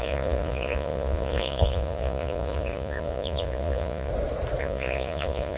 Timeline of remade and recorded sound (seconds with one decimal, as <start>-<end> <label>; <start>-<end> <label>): 0.0-4.1 remade; 4.1-4.6 recorded; 4.6-5.6 remade